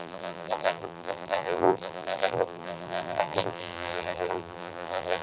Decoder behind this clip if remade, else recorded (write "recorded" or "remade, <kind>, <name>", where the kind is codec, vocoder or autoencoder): remade, vocoder, BigVGAN v2